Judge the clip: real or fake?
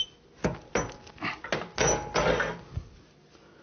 real